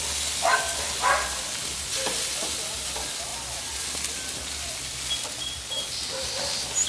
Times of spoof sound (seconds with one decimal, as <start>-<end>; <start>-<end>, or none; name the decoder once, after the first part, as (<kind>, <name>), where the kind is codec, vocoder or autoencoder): none